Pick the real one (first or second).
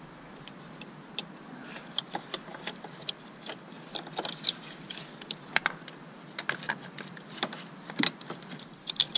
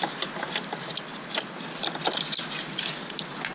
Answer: second